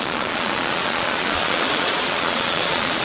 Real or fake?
fake